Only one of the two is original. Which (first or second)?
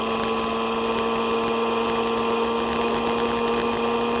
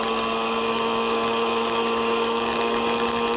first